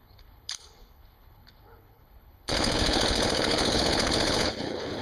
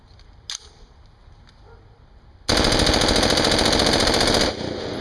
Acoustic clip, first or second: second